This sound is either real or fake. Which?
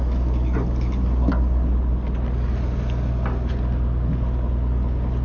real